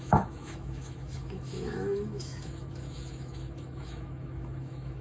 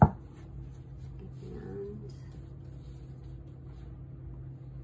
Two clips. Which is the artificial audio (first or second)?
first